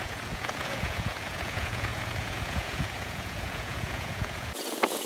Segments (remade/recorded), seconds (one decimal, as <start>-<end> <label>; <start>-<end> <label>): 0.0-5.1 remade